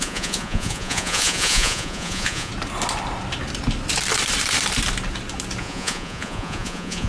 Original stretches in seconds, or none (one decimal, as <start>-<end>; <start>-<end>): 2.5-5.6